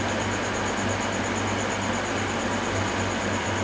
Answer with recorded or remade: recorded